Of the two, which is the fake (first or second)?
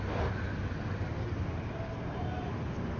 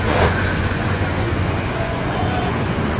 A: second